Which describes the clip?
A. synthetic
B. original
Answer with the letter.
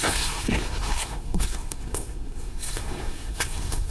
A